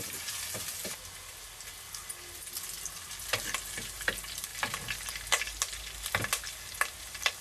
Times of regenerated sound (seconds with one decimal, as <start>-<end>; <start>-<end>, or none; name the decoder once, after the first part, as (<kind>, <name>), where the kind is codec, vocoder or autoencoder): none